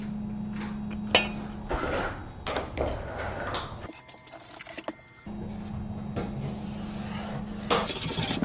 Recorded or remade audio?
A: recorded